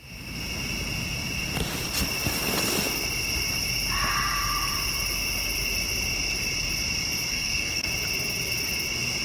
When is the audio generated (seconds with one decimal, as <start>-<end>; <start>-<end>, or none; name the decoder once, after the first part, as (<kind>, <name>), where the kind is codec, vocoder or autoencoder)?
7.3-7.9 (codec, SNAC)